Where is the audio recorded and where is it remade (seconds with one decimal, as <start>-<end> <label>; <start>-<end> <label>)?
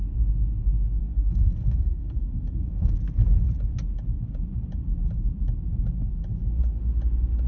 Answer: 0.0-1.0 recorded; 1.0-2.9 remade; 2.9-7.5 recorded